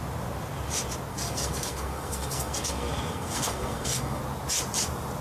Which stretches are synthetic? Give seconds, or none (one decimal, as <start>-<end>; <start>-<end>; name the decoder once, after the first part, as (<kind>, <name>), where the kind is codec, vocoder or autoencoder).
1.1-4.2 (codec, SNAC)